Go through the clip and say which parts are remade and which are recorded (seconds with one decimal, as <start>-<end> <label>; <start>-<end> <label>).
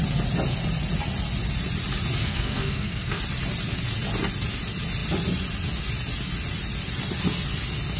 0.0-2.2 recorded; 2.2-3.2 remade; 3.2-8.0 recorded